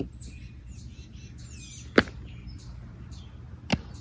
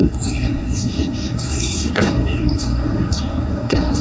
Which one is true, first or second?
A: first